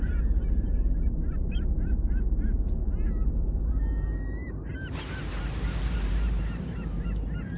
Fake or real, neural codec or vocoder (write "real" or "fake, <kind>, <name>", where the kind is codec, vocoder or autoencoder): fake, vocoder, BigVGAN v2